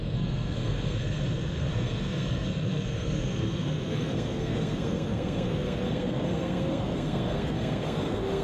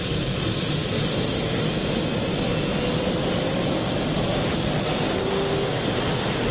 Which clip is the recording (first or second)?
second